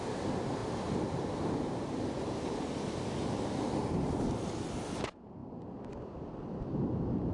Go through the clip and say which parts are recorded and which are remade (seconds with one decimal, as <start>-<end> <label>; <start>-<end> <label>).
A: 0.0-7.3 recorded